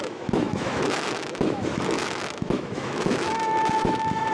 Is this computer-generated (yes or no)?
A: yes